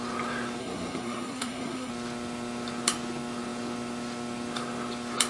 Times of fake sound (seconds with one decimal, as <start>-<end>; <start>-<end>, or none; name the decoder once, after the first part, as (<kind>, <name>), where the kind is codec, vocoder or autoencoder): 0.6-1.9 (codec, SNAC)

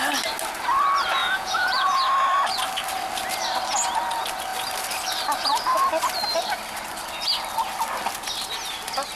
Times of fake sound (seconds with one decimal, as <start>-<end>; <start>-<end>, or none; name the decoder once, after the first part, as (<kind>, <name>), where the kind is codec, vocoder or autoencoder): 1.2-2.0 (vocoder, Vocos)

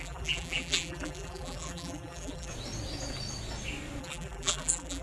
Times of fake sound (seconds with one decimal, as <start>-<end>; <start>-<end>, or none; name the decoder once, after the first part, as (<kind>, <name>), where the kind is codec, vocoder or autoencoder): 0.0-2.5 (vocoder, BigVGAN v2); 4.0-5.0

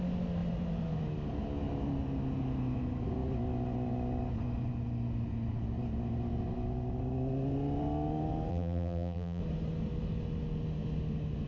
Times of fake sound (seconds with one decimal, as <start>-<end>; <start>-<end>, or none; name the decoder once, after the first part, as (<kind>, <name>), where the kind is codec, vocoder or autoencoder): 8.5-9.4 (vocoder, BigVGAN v2)

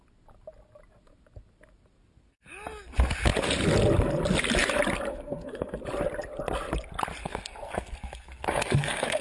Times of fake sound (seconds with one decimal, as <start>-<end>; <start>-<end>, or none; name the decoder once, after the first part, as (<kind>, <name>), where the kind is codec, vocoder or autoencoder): 5.1-5.8 (codec, SNAC); 7.2-9.2